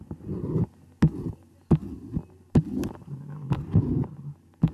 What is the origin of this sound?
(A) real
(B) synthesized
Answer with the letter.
A